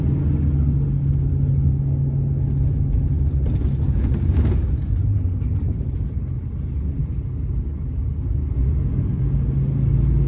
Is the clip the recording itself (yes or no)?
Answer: yes